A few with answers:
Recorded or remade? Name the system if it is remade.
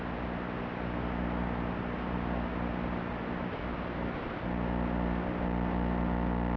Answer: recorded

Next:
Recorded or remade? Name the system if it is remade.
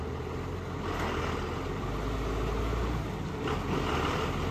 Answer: recorded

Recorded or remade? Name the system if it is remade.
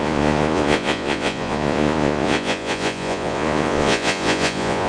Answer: remade, vocoder, Vocos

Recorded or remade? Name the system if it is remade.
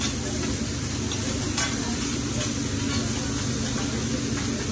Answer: recorded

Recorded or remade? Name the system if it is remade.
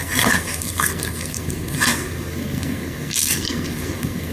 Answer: remade, codec, SNAC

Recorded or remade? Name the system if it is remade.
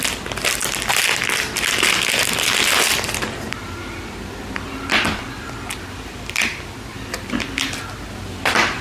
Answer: recorded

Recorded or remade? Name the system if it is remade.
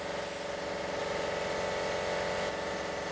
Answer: recorded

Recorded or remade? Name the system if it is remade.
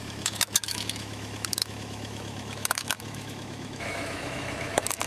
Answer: remade, autoencoder, DAC-VAE